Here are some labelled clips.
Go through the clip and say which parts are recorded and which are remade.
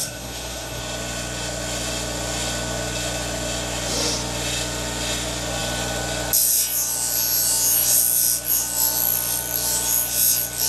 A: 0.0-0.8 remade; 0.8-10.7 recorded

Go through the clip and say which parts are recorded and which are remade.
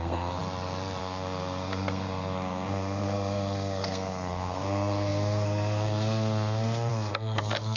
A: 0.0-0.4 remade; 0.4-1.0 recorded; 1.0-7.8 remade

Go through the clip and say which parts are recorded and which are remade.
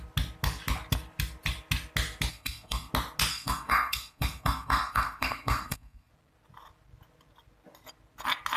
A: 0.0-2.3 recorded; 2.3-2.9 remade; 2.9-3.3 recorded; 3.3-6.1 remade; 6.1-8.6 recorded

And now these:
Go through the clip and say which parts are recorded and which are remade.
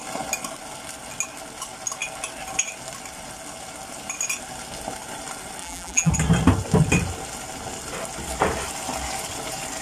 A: 0.0-5.6 recorded; 5.6-6.1 remade; 6.1-9.8 recorded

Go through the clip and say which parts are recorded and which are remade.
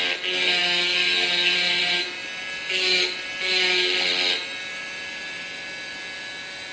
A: 0.0-6.7 recorded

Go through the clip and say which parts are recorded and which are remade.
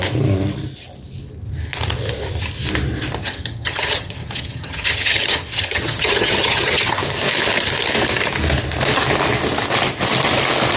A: 0.0-3.2 recorded; 3.2-7.0 remade; 7.0-10.8 recorded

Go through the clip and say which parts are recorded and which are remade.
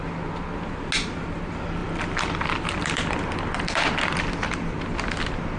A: 0.0-1.8 recorded; 1.8-4.8 remade; 4.8-5.6 recorded